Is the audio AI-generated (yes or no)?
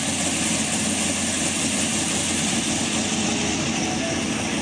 no